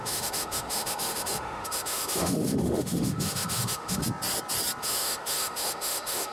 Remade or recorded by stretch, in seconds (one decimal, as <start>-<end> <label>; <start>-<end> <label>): 0.0-4.0 remade; 4.0-4.8 recorded; 4.8-6.3 remade